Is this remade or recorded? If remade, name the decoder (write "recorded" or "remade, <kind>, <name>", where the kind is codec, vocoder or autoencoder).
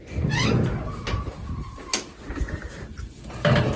recorded